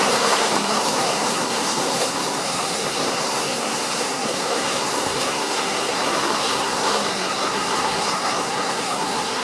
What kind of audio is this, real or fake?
fake